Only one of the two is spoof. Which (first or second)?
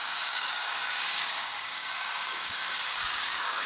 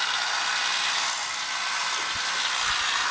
first